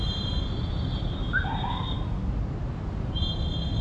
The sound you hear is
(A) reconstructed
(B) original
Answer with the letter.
B